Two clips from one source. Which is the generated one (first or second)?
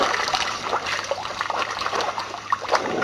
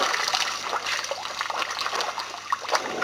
first